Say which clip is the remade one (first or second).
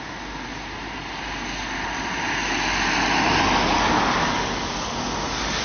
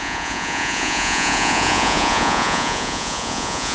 second